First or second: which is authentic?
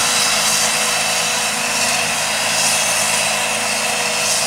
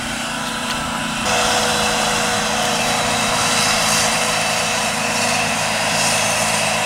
first